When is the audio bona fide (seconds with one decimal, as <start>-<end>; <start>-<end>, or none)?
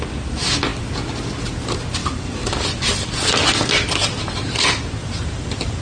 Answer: 0.0-2.0; 3.3-5.0